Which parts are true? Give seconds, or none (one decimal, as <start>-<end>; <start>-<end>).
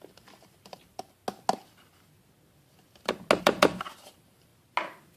1.2-3.4; 4.5-5.2